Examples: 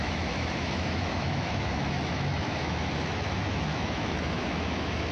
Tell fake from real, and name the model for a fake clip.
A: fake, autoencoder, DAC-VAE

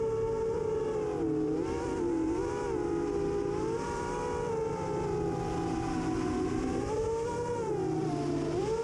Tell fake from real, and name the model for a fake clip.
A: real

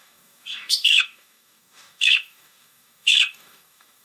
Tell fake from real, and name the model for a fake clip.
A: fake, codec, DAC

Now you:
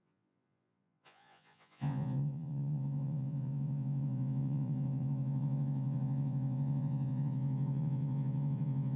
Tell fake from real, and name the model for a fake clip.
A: fake, vocoder, Vocos